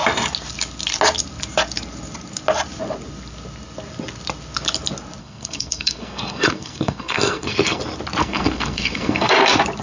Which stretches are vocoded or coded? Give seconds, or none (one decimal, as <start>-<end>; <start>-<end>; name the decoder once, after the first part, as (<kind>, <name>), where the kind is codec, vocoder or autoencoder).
5.2-7.8 (codec, SNAC); 8.2-9.3